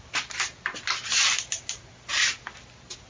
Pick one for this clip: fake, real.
real